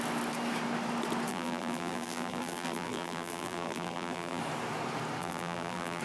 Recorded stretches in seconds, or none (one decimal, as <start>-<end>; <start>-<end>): 0.0-1.3; 4.4-5.2

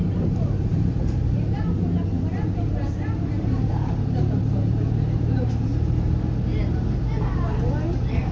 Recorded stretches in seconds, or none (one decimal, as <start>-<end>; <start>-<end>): 5.7-8.3